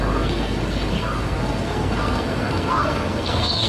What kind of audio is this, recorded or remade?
remade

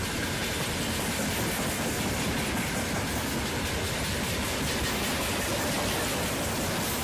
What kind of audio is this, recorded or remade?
recorded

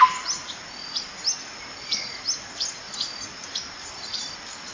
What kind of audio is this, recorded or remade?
recorded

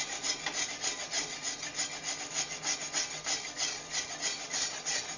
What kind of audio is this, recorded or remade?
recorded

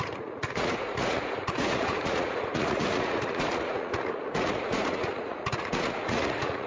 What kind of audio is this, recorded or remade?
remade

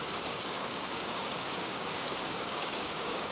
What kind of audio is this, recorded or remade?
remade